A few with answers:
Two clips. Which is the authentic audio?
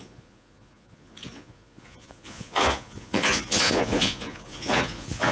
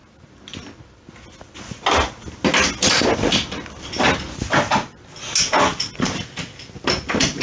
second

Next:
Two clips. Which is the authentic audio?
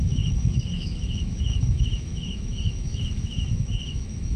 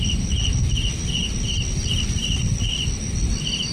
second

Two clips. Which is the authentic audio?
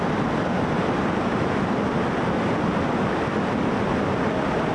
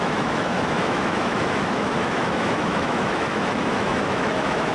first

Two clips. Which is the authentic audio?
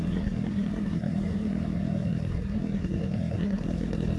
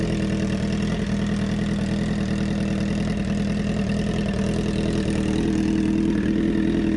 second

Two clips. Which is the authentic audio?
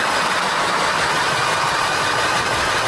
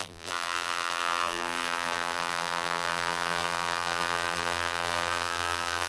first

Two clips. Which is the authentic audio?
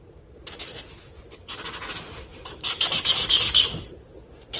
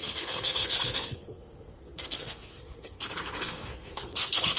first